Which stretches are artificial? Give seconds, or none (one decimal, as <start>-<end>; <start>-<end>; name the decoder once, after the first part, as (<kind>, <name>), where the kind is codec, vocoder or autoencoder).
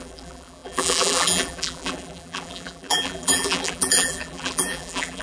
0.0-5.2 (vocoder, BigVGAN v2)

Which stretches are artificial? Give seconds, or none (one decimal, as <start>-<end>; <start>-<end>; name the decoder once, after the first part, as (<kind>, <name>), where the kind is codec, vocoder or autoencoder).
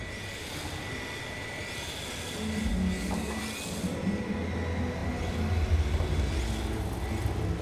2.7-3.4 (codec, DAC)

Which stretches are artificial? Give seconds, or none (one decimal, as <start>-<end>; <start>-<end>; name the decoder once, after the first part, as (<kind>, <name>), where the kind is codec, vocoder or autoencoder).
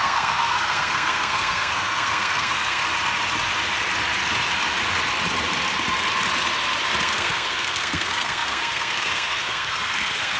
0.0-2.8 (codec, SNAC); 7.0-10.4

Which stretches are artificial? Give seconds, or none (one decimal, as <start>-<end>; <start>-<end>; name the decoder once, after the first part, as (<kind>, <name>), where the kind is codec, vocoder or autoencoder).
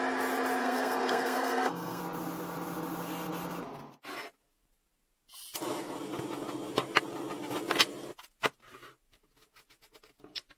0.6-2.0 (codec, SNAC)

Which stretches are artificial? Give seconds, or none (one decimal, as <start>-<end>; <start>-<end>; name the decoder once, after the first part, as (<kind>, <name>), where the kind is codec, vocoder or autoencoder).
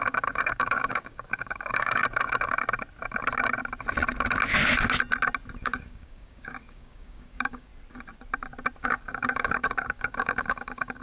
0.0-2.0 (codec, DAC); 5.6-7.7; 8.8-11.0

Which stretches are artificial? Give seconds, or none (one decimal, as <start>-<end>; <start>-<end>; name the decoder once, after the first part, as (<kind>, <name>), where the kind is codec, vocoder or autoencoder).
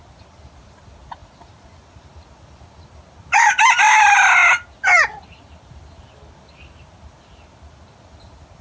none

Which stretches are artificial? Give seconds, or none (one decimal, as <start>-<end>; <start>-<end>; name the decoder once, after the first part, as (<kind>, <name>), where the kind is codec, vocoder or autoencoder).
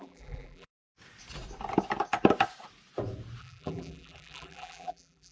0.0-0.7 (vocoder, BigVGAN v2); 3.4-5.3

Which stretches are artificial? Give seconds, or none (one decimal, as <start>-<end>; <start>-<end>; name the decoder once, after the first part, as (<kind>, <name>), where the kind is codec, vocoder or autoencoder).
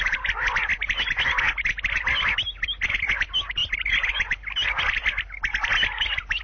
none